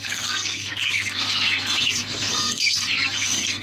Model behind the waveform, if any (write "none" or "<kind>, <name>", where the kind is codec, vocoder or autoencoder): codec, SNAC